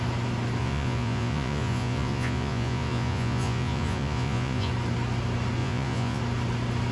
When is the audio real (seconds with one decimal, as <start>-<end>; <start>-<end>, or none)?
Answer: 0.0-0.6; 4.7-5.6; 6.2-6.9